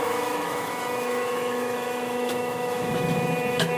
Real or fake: fake